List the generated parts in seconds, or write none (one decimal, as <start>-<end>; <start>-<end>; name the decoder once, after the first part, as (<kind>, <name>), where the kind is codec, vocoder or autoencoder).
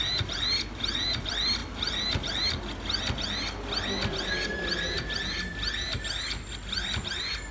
none